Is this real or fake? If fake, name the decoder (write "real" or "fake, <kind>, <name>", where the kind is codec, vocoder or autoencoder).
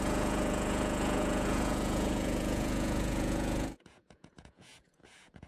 fake, vocoder, Vocos